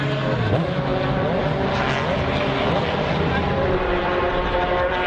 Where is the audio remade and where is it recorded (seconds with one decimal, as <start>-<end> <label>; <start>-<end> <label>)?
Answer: 0.0-5.1 recorded